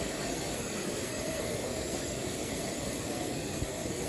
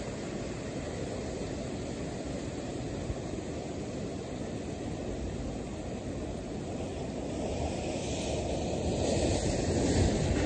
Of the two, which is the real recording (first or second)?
second